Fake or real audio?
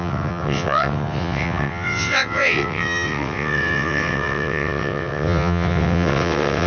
fake